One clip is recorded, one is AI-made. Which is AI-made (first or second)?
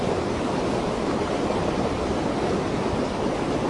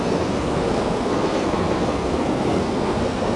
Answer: second